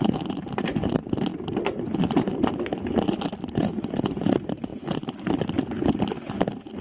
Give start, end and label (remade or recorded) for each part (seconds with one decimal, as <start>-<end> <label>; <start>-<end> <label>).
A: 0.0-1.0 remade; 1.0-3.4 recorded; 3.4-4.7 remade; 4.7-6.8 recorded